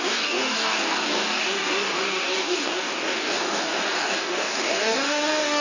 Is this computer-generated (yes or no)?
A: yes